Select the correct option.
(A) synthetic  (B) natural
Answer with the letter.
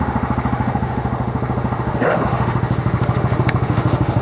A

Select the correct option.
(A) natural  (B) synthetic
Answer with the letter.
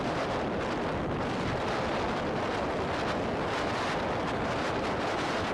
A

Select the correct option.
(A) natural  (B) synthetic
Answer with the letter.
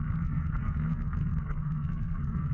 B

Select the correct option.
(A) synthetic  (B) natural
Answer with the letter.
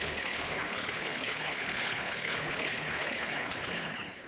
A